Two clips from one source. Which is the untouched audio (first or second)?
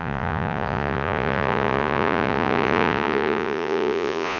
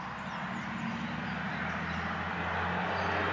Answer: second